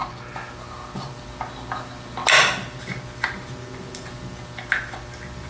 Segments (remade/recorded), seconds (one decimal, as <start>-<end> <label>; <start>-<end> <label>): 0.0-5.5 recorded